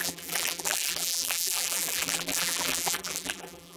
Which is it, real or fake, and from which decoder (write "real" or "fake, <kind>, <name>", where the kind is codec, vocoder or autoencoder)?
fake, vocoder, BigVGAN v2